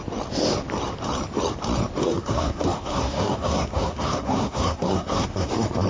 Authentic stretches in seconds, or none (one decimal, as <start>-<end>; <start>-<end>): 0.0-2.0; 5.5-5.9